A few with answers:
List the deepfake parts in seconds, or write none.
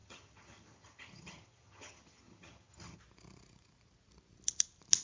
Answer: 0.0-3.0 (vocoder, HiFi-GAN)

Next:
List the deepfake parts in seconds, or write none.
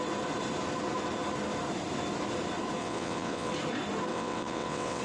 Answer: 2.8-3.5 (vocoder, WaveNeXt); 4.1-5.0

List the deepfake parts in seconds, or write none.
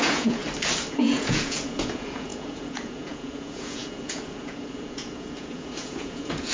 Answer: 0.0-0.4 (vocoder, Vocos); 0.9-6.5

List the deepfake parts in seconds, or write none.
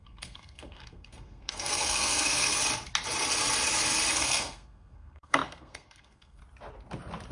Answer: 0.0-2.6 (codec, SNAC); 4.1-6.4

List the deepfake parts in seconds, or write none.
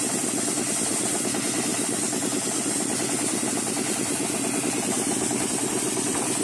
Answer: none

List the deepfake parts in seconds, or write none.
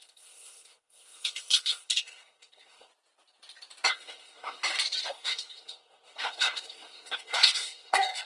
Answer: 0.0-2.9 (codec, SNAC); 3.9-4.6; 5.1-8.3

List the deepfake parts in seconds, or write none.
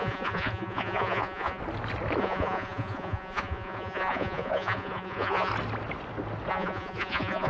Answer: 0.0-1.6 (vocoder, Vocos); 2.2-5.5; 6.5-7.5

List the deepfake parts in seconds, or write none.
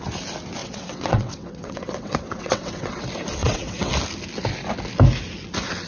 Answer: 0.6-3.0 (vocoder, WaveNeXt); 3.4-3.9